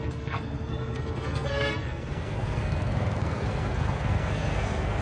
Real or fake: fake